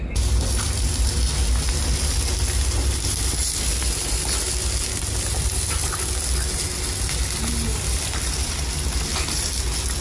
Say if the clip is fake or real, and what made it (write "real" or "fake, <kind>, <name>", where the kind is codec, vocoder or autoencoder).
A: real